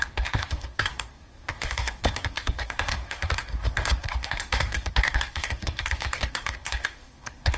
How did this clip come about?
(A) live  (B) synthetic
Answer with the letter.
B